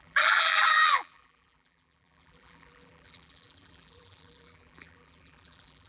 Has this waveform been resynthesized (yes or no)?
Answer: yes